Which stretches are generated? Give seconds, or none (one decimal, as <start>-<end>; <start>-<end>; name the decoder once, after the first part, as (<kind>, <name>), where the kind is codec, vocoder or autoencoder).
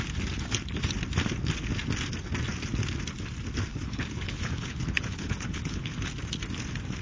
3.7-6.1 (codec, HILCodec)